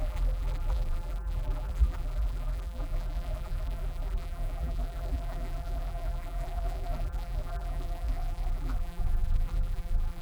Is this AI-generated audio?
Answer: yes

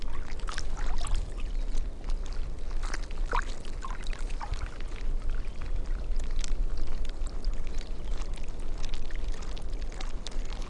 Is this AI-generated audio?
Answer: no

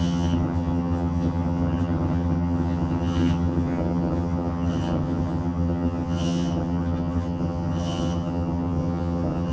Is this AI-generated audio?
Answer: yes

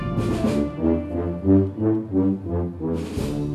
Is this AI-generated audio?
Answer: no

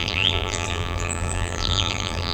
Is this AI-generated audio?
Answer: yes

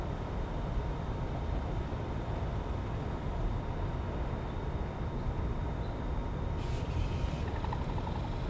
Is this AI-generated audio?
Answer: yes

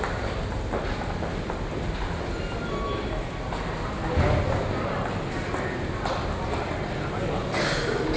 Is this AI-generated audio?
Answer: no